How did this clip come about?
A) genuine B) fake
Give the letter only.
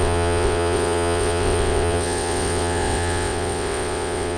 B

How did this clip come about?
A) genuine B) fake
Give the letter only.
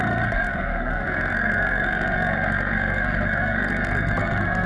B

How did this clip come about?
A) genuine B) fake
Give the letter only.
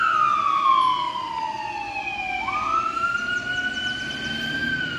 A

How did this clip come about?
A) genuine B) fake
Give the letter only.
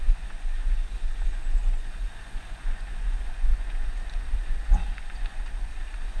B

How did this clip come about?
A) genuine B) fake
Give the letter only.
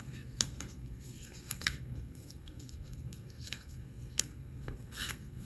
B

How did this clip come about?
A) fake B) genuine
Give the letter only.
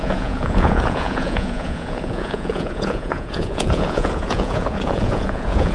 A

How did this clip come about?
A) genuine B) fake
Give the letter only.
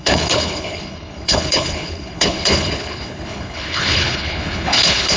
B